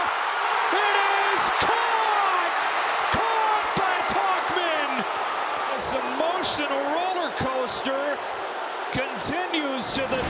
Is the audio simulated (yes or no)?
no